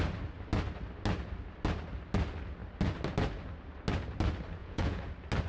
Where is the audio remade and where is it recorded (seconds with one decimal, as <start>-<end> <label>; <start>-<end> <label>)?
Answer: 0.0-4.6 recorded; 4.6-5.1 remade; 5.1-5.5 recorded